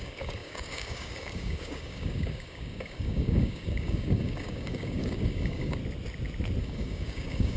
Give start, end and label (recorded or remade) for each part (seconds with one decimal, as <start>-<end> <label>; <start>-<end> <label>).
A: 0.0-5.8 remade; 5.8-6.6 recorded; 6.6-7.6 remade